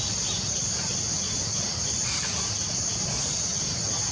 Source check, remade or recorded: recorded